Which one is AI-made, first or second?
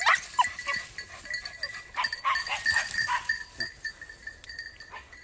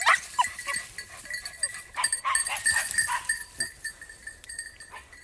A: second